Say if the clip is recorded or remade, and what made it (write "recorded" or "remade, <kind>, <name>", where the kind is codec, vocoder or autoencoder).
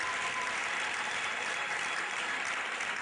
remade, vocoder, BigVGAN v2